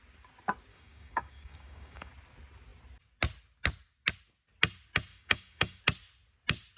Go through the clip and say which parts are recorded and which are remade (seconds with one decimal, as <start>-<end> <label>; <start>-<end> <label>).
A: 0.0-0.7 recorded; 0.7-2.1 remade; 2.1-5.1 recorded; 5.1-5.8 remade; 5.8-6.8 recorded

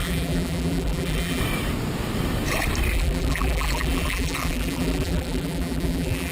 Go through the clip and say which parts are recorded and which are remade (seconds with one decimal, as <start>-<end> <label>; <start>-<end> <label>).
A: 0.0-1.4 remade; 1.4-2.9 recorded; 2.9-6.3 remade

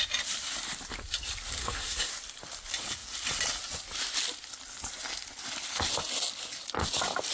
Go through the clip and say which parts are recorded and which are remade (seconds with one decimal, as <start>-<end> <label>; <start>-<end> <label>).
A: 0.0-1.6 recorded; 1.6-2.1 remade; 2.1-7.3 recorded

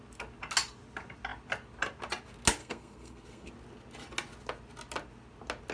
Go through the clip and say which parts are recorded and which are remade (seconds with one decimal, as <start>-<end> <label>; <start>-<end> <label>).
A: 0.0-2.6 recorded; 2.6-3.5 remade; 3.5-5.7 recorded